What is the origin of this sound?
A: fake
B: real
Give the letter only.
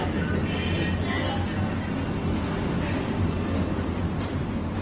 B